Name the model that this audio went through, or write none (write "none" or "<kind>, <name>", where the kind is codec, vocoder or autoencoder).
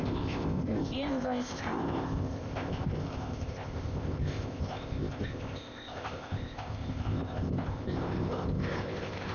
codec, ZipCodec